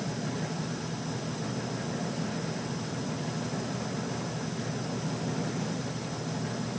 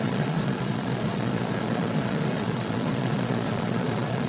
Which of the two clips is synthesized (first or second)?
second